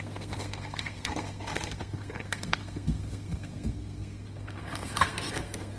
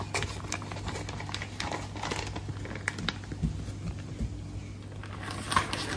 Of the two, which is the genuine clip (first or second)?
second